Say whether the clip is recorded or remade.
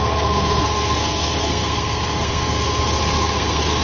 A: remade